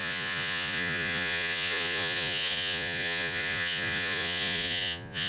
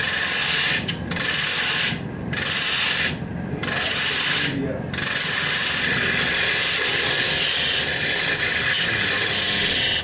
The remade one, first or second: first